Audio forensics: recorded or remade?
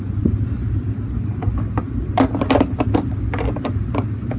recorded